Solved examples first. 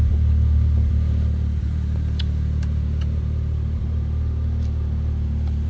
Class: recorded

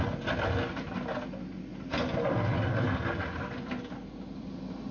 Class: recorded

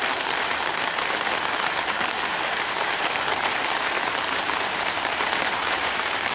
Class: remade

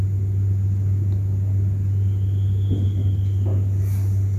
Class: recorded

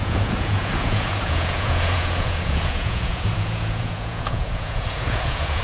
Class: remade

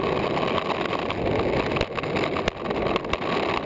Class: recorded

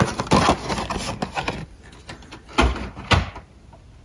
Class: recorded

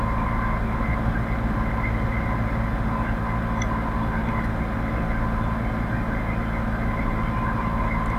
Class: recorded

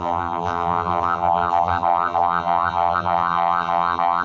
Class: remade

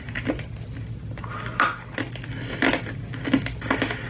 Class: recorded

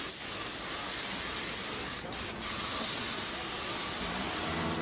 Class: recorded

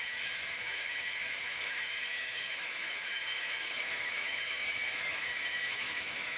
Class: remade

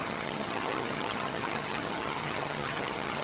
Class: remade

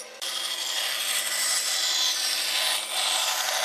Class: recorded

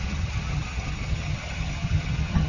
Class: remade